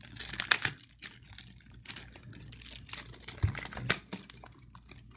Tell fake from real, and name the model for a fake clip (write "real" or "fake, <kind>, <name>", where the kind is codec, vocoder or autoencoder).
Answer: real